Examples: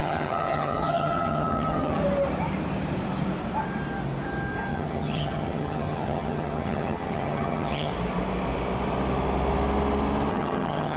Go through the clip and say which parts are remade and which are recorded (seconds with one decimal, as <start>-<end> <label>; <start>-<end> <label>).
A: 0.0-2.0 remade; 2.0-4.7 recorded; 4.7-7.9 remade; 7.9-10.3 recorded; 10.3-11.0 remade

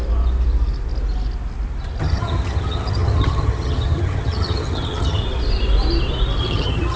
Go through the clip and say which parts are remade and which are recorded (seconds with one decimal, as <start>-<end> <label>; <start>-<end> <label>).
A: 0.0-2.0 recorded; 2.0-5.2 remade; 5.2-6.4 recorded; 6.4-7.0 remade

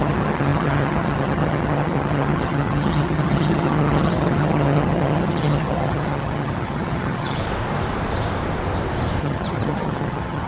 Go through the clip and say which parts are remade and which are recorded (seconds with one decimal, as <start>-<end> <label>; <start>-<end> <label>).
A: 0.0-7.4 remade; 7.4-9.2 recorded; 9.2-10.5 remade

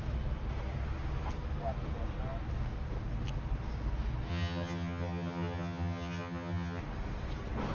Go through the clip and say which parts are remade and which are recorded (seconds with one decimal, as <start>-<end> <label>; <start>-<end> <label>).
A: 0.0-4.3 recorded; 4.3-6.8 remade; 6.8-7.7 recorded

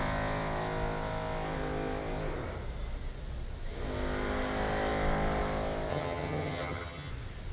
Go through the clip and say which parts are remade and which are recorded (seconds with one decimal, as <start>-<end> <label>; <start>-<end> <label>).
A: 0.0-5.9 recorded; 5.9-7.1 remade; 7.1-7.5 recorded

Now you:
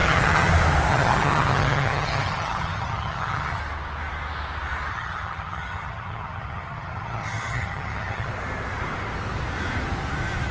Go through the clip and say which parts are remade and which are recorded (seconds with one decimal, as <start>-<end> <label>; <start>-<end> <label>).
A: 0.0-0.5 remade; 0.5-0.9 recorded; 0.9-3.6 remade; 3.6-4.9 recorded; 4.9-8.3 remade; 8.3-10.5 recorded